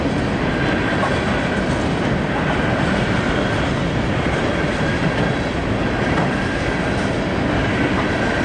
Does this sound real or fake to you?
real